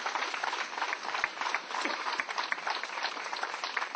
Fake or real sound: fake